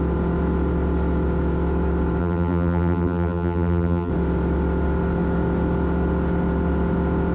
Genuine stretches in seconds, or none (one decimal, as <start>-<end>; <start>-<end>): 0.0-2.2; 4.1-7.3